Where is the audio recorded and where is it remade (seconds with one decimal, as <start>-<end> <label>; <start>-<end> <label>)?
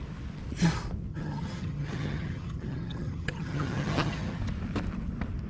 0.0-1.1 recorded; 1.1-4.4 remade; 4.4-5.5 recorded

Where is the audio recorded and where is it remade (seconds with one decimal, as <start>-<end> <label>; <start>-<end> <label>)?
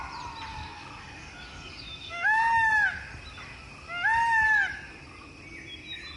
0.0-0.5 recorded; 0.5-2.4 remade; 2.4-6.2 recorded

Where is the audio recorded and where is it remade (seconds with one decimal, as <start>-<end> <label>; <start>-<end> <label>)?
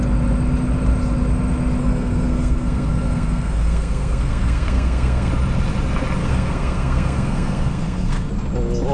0.0-1.8 recorded; 1.8-5.3 remade; 5.3-6.2 recorded; 6.2-8.3 remade; 8.3-8.9 recorded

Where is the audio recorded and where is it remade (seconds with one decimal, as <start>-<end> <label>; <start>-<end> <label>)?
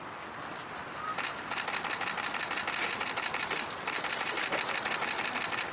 0.0-1.1 recorded; 1.1-4.5 remade; 4.5-5.7 recorded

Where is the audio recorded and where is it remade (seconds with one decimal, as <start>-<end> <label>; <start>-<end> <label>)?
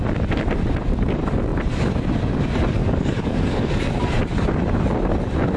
0.0-2.8 recorded; 2.8-3.7 remade; 3.7-5.6 recorded